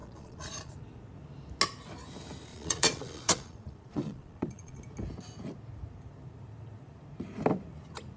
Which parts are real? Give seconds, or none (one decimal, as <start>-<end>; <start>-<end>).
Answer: 0.7-2.5; 4.8-8.2